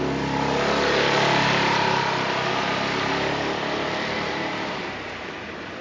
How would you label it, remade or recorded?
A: recorded